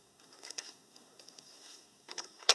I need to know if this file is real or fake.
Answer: fake